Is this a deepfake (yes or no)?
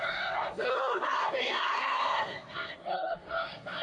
yes